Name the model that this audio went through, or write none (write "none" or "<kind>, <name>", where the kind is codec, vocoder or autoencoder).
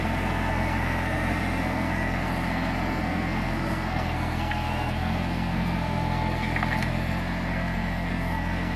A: codec, SNAC